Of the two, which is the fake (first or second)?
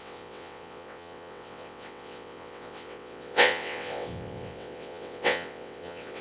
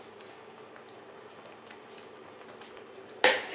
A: first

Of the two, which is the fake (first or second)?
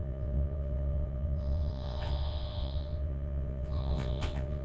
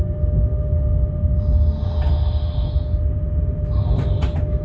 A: first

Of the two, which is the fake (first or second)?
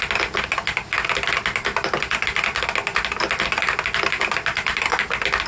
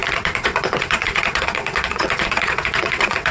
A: second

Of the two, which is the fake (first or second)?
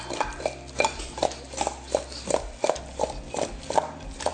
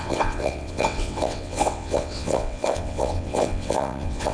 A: second